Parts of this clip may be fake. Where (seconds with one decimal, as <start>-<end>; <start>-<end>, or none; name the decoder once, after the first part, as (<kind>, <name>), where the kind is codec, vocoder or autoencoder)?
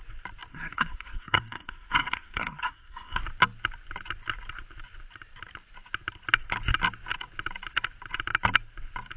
0.5-3.2 (codec, SNAC)